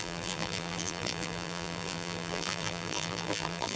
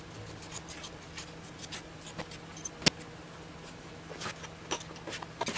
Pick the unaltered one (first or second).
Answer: second